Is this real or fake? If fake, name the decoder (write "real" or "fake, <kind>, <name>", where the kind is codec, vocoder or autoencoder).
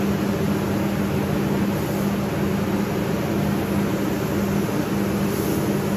real